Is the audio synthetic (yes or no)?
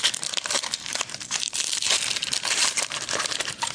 yes